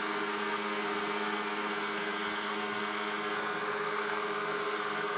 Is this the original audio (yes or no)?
no